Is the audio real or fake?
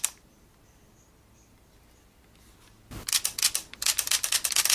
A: real